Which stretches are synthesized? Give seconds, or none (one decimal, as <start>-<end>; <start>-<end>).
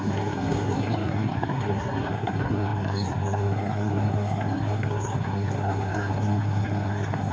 0.0-7.3